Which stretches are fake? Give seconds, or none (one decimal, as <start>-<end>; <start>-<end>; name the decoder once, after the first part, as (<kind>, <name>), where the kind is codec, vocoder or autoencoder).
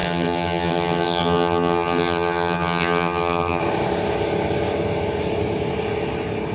0.0-3.6 (vocoder, HiFi-GAN)